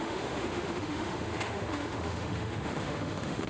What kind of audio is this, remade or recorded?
remade